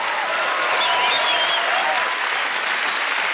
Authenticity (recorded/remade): recorded